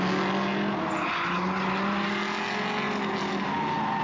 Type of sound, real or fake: real